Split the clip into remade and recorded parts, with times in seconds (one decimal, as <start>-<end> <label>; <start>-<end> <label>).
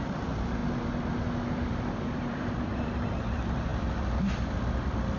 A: 0.0-0.6 remade; 0.6-1.5 recorded; 1.5-5.2 remade